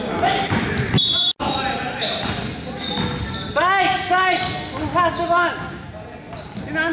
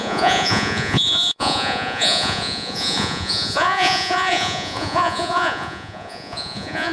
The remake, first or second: second